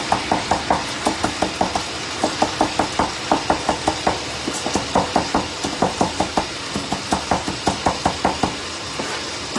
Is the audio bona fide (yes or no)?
yes